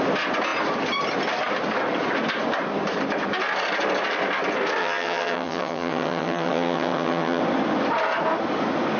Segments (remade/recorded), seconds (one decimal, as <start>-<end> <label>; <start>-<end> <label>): 0.0-4.8 recorded; 4.8-7.4 remade; 7.4-9.0 recorded